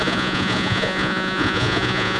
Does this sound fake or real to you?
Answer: fake